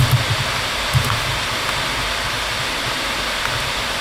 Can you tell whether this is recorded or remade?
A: recorded